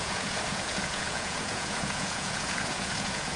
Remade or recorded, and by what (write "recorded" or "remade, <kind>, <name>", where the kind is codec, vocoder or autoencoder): remade, vocoder, Vocos